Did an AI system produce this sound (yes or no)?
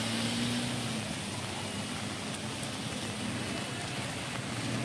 no